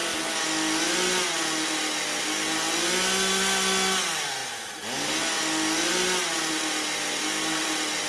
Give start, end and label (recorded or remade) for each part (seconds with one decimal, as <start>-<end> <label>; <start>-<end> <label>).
0.0-8.1 recorded